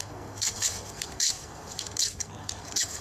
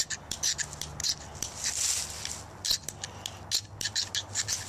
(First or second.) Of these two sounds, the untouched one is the second